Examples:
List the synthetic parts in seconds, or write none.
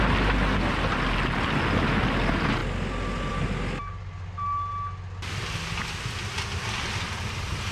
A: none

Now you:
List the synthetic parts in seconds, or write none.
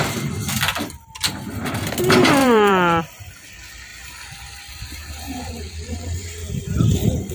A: 2.4-3.0 (vocoder, BigVGAN v2); 3.9-5.5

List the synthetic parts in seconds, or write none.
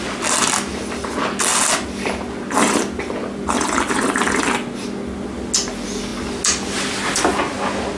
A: none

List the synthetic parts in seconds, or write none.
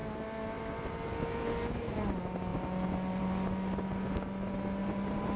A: 4.8-5.4 (vocoder, BigVGAN v2)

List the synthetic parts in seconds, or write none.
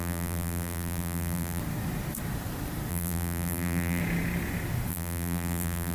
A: 0.0-1.6 (vocoder, BigVGAN v2); 2.9-4.0; 4.9-5.9